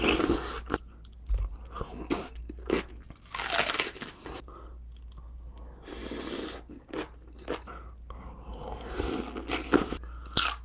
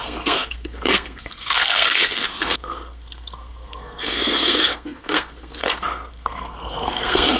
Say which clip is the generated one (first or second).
second